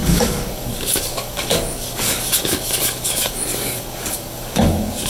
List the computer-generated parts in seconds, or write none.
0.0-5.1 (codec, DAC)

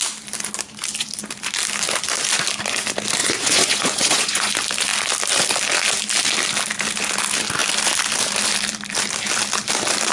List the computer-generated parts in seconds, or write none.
3.2-4.5 (vocoder, Vocos)